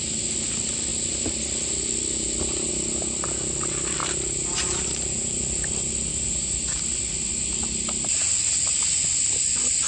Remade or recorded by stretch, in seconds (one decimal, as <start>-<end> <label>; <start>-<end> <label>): 0.0-4.0 recorded; 4.0-5.4 remade; 5.4-6.1 recorded; 6.1-6.8 remade; 6.8-9.9 recorded